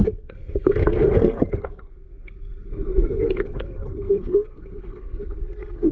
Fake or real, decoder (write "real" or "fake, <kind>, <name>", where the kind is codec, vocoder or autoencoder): fake, codec, SNAC